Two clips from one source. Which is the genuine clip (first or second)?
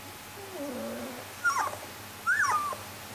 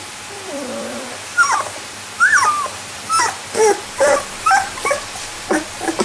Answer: first